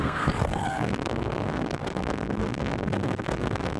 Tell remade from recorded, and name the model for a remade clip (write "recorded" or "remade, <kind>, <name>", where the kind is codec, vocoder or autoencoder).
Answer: remade, codec, SNAC